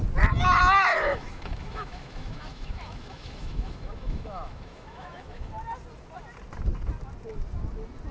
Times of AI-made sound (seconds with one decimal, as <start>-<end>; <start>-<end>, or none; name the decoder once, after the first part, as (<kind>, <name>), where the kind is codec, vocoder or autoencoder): 0.9-5.5 (autoencoder, DAC-VAE)